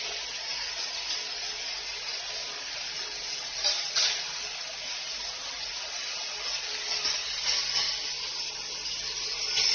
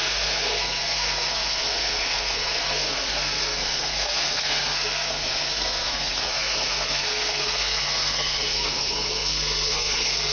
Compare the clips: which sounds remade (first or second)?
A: second